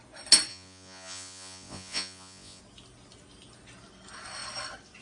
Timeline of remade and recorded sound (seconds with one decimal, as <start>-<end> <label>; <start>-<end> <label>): 0.0-0.5 recorded; 0.5-2.6 remade; 2.6-5.0 recorded